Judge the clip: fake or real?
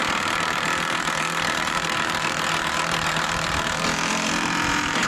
fake